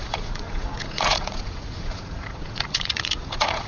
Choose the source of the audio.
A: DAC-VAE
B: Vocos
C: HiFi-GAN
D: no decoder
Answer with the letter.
B